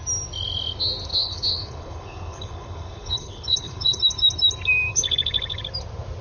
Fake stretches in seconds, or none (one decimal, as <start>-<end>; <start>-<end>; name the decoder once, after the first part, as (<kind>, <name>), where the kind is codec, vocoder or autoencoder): 1.1-4.0 (codec, HILCodec); 4.9-5.6